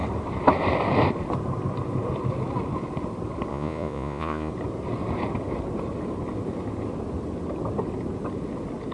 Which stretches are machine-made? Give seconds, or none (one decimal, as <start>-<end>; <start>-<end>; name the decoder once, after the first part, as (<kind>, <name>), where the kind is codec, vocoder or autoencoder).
3.5-4.5 (vocoder, Vocos)